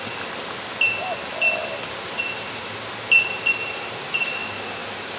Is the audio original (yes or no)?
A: yes